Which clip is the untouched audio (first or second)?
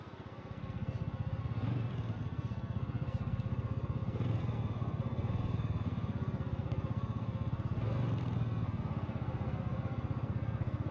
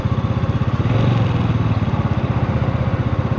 second